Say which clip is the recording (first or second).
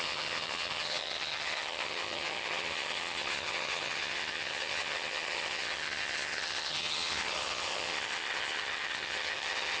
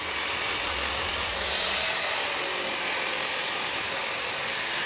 second